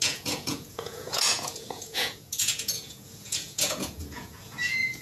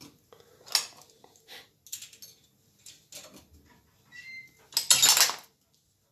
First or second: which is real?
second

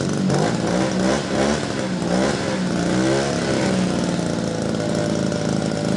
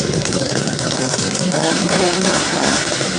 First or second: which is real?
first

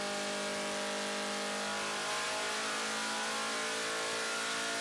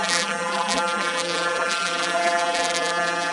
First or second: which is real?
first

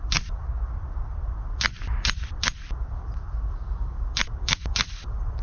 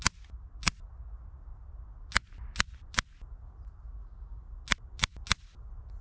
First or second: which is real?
second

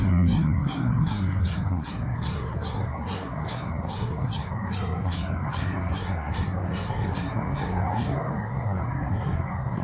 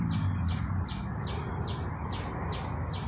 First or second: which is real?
second